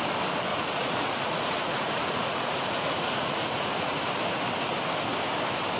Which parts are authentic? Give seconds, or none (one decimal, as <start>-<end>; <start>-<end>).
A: 0.0-0.5; 4.0-5.8